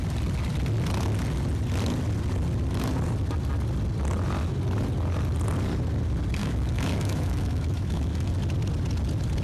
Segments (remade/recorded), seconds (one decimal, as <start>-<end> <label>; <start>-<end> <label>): 0.0-6.4 recorded; 6.4-8.3 remade; 8.3-9.4 recorded